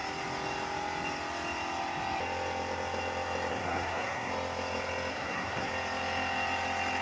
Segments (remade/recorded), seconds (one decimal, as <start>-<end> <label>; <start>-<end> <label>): 0.0-3.5 recorded; 3.5-4.3 remade; 4.3-5.1 recorded; 5.1-5.7 remade; 5.7-7.0 recorded